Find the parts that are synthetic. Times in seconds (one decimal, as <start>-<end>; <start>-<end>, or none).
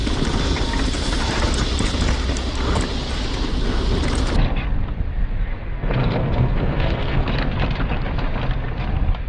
5.5-7.3